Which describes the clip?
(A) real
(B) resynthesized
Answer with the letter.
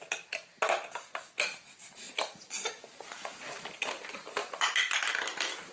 A